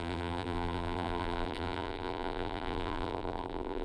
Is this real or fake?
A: fake